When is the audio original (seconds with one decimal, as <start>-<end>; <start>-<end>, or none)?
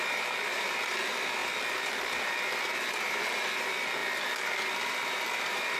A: 0.0-4.0